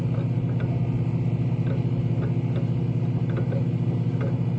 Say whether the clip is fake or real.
real